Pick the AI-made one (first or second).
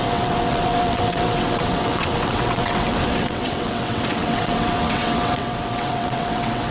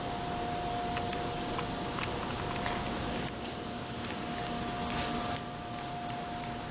first